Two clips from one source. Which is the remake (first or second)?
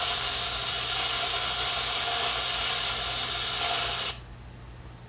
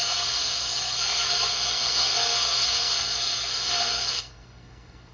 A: second